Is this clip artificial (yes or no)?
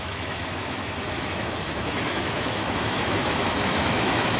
yes